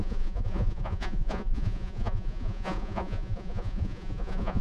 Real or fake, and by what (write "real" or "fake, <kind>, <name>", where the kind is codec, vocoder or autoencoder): fake, vocoder, Vocos